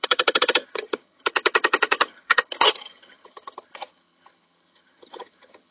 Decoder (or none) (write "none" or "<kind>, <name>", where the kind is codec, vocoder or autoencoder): vocoder, HiFi-GAN